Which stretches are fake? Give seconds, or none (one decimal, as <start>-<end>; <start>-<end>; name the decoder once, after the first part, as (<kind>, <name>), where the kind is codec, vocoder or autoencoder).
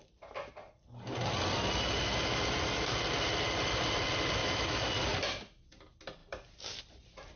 4.4-4.9 (autoencoder, DAC-VAE)